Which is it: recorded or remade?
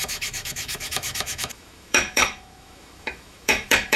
remade